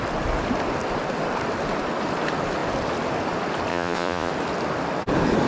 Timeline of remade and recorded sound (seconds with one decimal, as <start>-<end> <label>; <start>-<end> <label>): 0.0-3.7 recorded; 3.7-4.3 remade; 4.3-5.5 recorded